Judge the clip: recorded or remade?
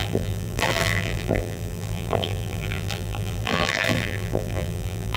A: remade